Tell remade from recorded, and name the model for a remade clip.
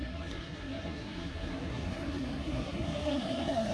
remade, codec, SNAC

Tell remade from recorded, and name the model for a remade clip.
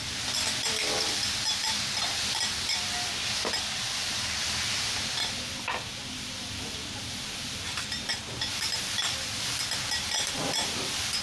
remade, vocoder, BigVGAN v2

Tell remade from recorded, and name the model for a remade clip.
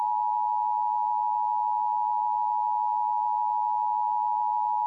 recorded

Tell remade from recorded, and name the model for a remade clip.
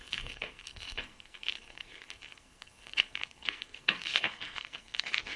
remade, codec, SNAC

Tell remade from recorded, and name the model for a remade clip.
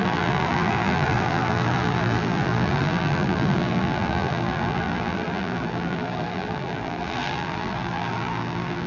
remade, vocoder, BigVGAN v2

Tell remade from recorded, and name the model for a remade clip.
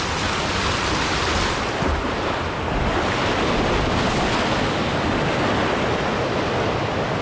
recorded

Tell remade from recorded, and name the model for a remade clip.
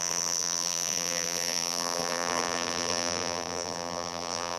remade, vocoder, BigVGAN v2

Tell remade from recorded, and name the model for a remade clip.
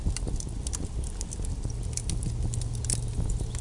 recorded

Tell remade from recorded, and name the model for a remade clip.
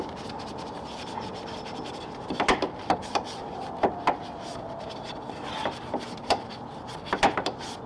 remade, vocoder, BigVGAN v2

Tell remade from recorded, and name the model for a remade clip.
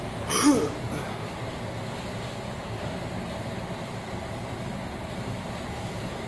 recorded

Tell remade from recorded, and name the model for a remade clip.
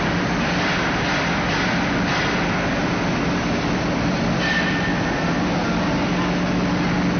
recorded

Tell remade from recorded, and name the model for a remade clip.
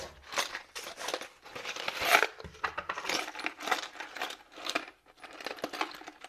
recorded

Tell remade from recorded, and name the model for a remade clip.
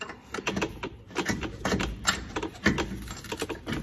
recorded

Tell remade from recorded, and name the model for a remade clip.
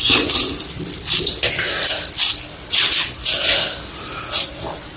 recorded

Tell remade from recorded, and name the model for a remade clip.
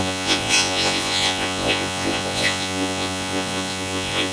remade, vocoder, Vocos